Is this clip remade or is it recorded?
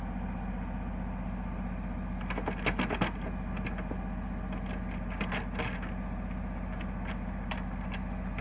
recorded